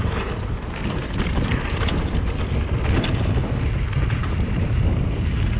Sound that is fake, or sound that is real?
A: real